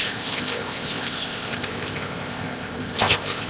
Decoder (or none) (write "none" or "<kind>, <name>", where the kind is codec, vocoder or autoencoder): codec, ZipCodec